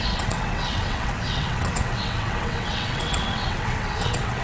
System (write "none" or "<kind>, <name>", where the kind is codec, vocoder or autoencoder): vocoder, WaveNeXt